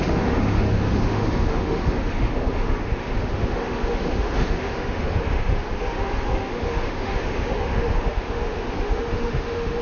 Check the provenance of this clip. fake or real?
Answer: fake